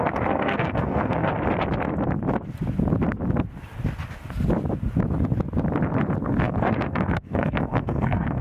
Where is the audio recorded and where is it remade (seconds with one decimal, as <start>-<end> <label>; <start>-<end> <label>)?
0.0-1.3 remade; 1.3-6.2 recorded; 6.2-8.4 remade